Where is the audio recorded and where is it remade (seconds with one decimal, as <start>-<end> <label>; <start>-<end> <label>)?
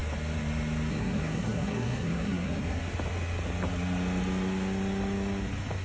0.0-0.9 recorded; 0.9-2.8 remade; 2.8-5.8 recorded